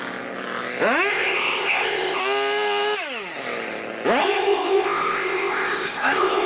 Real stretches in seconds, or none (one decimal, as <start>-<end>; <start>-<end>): 0.0-1.1; 2.2-4.2